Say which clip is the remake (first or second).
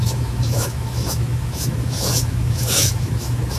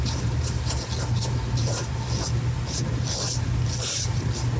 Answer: first